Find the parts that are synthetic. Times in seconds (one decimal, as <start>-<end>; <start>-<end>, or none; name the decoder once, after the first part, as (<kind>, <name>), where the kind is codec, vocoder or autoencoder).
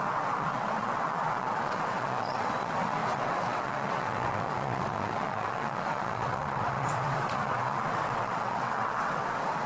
0.0-9.7 (vocoder, WaveNeXt)